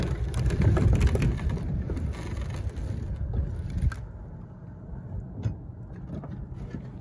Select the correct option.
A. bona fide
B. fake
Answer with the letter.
A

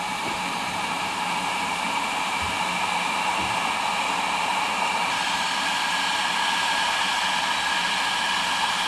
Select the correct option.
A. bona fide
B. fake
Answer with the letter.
A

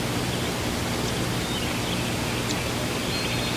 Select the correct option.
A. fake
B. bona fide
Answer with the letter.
B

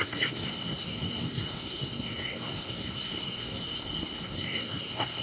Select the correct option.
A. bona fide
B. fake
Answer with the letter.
B